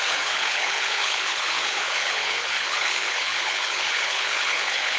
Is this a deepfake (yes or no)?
yes